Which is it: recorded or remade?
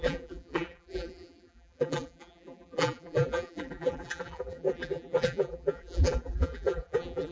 remade